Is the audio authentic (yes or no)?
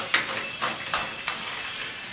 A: yes